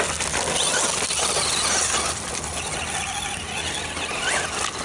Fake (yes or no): no